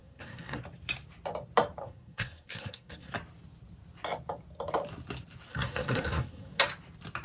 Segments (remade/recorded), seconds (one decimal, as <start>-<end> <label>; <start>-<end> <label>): 0.0-0.6 remade; 0.6-1.8 recorded; 1.8-3.1 remade; 3.1-5.5 recorded; 5.5-6.6 remade; 6.6-7.2 recorded